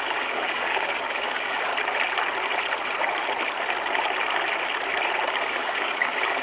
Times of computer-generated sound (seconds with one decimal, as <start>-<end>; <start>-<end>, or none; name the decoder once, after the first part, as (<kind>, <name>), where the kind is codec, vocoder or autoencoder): 0.0-1.7 (codec, DAC); 5.5-6.4